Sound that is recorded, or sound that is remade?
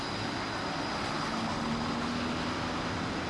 recorded